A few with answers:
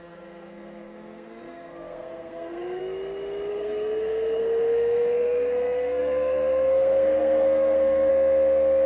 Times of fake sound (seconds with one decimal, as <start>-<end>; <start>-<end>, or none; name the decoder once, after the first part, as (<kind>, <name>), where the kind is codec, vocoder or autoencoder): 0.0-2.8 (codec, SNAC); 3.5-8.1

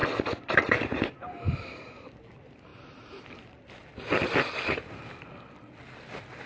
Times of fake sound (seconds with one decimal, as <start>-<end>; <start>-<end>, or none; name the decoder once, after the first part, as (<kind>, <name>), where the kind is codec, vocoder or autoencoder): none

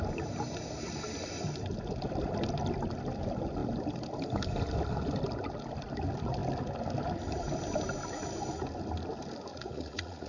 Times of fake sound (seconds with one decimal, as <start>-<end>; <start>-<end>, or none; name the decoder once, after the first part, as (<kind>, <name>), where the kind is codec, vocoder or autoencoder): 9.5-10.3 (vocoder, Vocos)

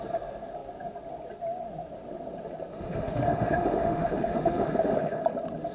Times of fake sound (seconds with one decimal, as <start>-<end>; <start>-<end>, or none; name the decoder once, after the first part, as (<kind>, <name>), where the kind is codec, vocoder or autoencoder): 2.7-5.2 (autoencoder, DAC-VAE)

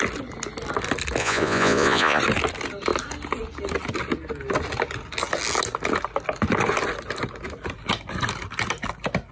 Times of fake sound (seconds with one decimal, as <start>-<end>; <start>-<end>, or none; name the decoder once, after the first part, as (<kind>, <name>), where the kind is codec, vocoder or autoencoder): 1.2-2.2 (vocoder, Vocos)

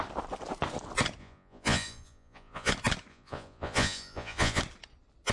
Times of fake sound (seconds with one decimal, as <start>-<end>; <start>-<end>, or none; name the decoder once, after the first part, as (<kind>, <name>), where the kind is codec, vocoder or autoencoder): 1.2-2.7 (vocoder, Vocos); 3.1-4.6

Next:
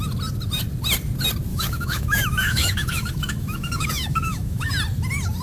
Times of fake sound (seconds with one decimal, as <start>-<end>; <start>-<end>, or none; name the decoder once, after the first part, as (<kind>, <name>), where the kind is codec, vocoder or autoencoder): 1.5-4.7 (autoencoder, DAC-VAE)

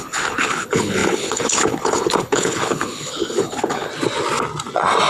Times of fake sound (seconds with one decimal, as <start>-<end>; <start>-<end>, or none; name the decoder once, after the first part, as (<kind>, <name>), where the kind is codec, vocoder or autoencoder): 0.0-3.9 (codec, HILCodec)